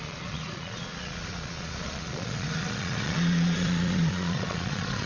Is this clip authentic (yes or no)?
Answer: no